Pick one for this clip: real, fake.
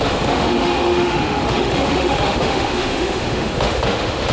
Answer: fake